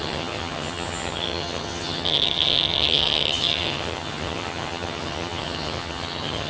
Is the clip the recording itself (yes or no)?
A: no